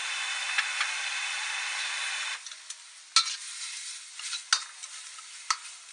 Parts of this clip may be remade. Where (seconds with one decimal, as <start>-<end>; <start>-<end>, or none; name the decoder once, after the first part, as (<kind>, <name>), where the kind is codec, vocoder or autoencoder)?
none